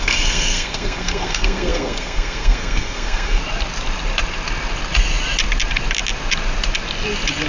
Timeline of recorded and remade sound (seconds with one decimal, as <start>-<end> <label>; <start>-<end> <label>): 0.0-3.4 remade; 3.4-7.5 recorded